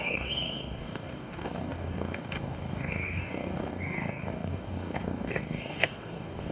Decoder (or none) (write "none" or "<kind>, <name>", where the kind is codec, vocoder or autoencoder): codec, DAC